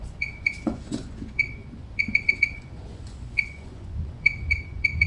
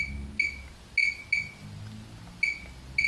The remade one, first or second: first